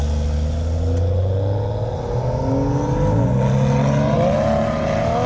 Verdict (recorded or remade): recorded